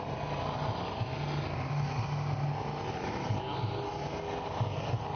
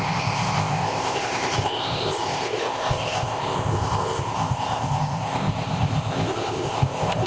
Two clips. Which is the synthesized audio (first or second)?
second